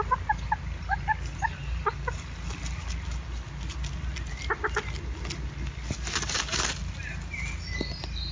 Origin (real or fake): real